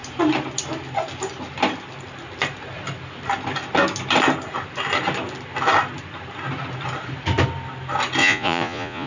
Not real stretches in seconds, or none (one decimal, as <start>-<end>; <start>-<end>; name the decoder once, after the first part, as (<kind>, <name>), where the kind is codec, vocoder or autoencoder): 8.2-9.1 (vocoder, Vocos)